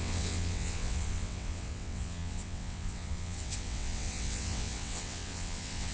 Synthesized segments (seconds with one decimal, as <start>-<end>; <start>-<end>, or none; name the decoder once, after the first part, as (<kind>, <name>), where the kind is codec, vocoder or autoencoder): 0.0-5.9 (vocoder, WaveNeXt)